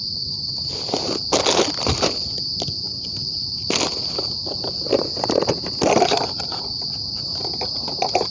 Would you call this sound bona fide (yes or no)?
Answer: yes